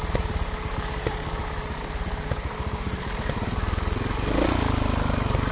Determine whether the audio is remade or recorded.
recorded